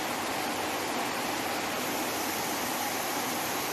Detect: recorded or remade remade